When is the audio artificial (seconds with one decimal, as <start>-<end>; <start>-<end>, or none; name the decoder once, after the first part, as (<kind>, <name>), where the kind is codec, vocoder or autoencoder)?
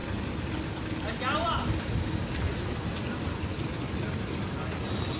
none